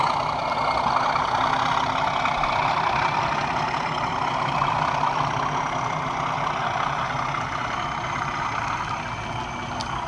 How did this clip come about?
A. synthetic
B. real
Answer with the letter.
B